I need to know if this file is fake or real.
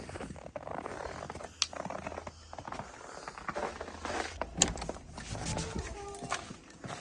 real